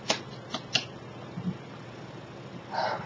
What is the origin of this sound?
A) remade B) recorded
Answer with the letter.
B